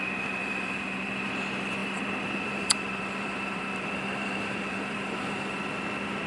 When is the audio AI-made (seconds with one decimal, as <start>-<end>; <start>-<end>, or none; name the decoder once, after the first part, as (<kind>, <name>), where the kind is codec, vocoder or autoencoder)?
0.4-1.3 (vocoder, BigVGAN v2); 1.8-5.6